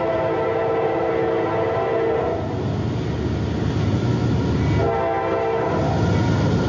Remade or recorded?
recorded